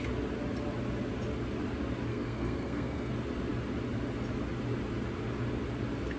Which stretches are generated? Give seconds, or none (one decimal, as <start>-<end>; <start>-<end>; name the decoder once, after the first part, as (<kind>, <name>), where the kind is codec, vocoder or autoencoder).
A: 2.1-3.1 (codec, SNAC)